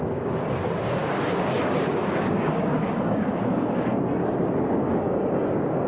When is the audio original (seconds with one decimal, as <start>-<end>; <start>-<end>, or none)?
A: 3.9-4.6